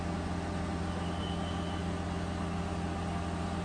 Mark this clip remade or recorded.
recorded